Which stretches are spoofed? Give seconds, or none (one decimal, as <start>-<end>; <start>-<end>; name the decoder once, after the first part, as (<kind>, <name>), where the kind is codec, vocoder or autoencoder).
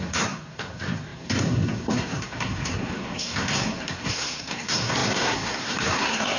0.0-6.4 (codec, SNAC)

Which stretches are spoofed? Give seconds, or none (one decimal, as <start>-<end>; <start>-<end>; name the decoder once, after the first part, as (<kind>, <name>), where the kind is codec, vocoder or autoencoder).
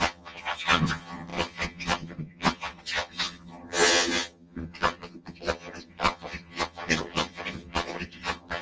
0.0-8.6 (vocoder, HiFi-GAN)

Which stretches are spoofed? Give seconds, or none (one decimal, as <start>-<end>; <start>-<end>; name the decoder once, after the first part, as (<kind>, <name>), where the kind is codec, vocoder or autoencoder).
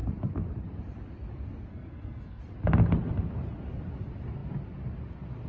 1.7-2.4 (codec, SNAC)